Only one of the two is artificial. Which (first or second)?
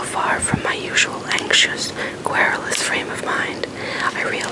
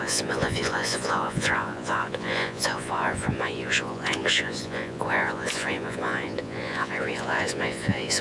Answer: second